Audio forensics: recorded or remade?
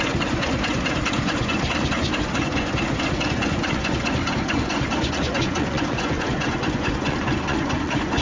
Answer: remade